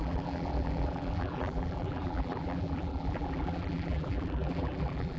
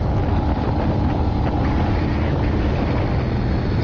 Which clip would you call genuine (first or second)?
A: second